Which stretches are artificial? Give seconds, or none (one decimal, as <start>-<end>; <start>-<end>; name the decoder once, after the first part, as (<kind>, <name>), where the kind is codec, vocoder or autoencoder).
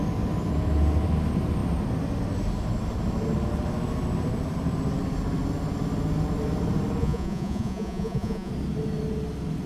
7.0-8.5 (vocoder, Vocos)